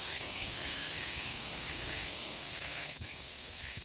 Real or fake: fake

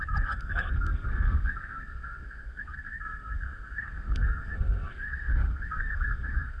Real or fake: fake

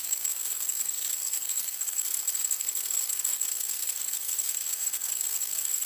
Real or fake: fake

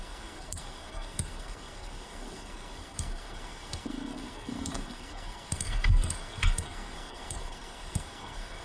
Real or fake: fake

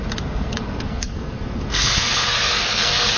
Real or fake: fake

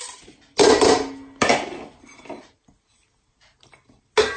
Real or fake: real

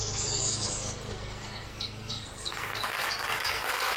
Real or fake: fake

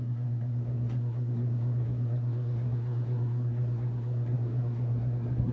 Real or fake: fake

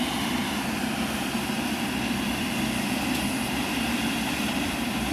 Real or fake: real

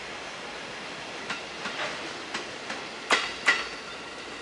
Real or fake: real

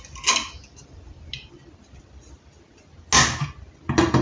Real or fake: real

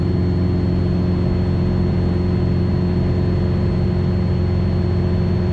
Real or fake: real